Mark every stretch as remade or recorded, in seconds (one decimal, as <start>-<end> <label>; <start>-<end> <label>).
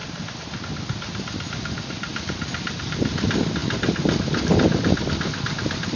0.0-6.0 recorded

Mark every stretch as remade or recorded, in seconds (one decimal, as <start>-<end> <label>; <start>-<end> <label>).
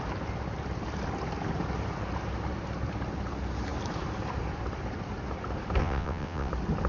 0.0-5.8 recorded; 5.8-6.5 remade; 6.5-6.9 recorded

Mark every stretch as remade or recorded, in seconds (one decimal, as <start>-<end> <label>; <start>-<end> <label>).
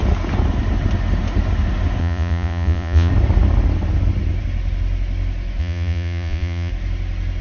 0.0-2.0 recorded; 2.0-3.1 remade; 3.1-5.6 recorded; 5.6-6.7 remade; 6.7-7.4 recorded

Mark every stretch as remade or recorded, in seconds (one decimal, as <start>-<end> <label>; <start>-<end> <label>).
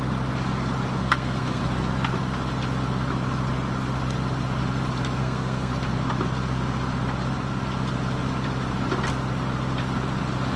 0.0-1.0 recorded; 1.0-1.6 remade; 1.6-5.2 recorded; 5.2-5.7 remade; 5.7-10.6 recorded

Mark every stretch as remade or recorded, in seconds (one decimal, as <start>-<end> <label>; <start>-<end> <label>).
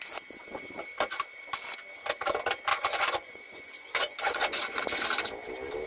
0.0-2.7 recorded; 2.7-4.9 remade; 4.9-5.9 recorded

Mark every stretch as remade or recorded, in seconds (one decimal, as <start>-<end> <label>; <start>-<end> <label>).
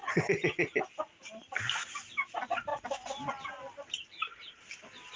0.0-5.2 recorded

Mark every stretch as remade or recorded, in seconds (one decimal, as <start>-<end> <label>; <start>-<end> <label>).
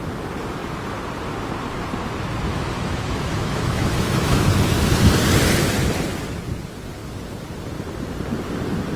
0.0-2.5 recorded; 2.5-4.5 remade; 4.5-9.0 recorded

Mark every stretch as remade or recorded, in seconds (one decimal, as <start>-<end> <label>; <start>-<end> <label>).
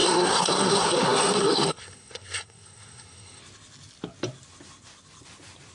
0.0-3.4 remade; 3.4-5.7 recorded